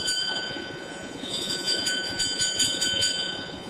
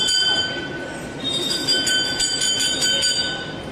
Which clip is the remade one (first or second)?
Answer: first